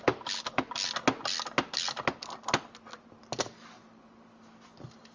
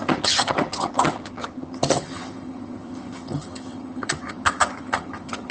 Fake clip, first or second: second